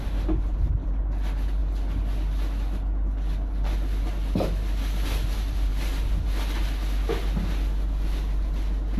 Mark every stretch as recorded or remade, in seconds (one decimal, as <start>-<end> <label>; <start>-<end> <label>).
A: 0.0-9.0 recorded